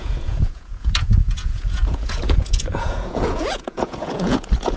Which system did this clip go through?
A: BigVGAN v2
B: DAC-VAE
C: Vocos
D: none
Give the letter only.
C